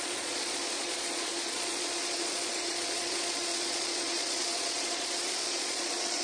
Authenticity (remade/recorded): remade